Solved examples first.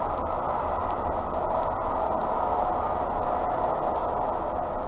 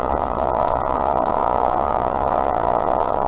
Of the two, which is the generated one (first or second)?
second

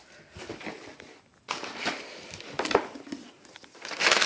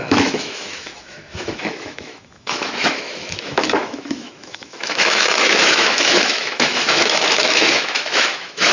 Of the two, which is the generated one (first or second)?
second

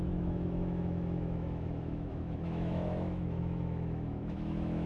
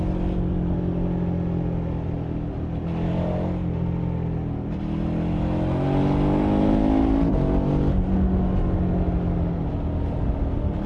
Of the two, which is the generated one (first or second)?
first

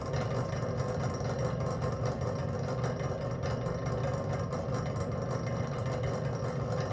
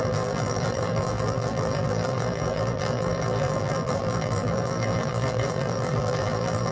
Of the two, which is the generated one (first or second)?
second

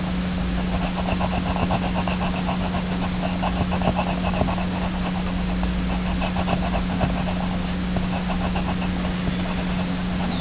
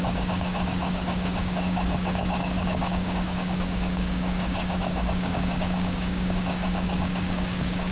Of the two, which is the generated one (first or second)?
second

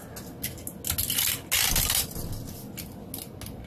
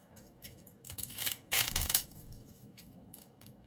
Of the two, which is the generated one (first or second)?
second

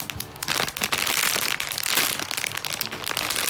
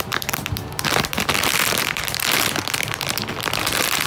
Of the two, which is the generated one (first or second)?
second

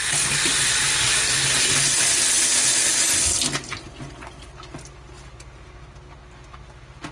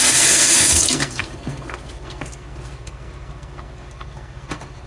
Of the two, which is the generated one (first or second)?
second